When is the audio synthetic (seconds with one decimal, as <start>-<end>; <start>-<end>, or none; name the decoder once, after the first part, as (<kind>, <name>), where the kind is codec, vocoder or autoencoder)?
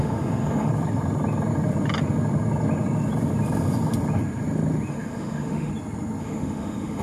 0.0-0.7 (autoencoder, DAC-VAE); 4.9-5.7; 6.2-7.0